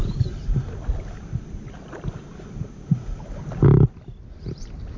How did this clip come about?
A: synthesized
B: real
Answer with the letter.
B